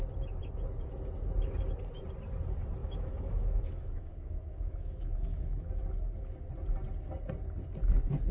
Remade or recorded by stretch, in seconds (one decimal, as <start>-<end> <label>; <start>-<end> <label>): 0.0-2.8 recorded; 2.8-5.7 remade; 5.7-8.3 recorded